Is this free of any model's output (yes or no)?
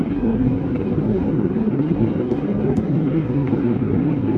no